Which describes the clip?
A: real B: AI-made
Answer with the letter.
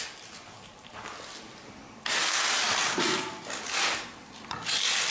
A